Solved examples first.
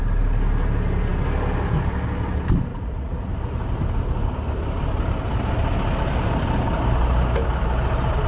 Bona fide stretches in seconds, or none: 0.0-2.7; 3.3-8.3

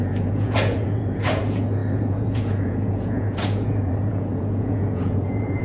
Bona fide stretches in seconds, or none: none

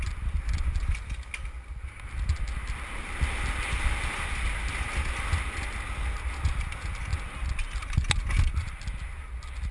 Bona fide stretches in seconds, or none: 0.0-9.7

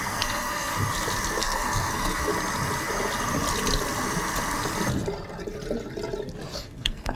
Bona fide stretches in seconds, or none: 0.7-1.4; 2.3-6.6

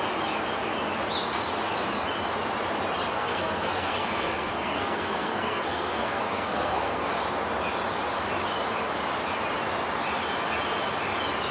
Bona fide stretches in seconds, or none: 0.0-3.1; 7.1-11.5

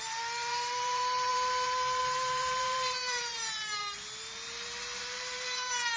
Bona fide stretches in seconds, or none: 3.8-5.0

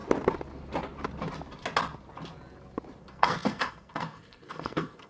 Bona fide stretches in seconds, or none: 0.0-3.0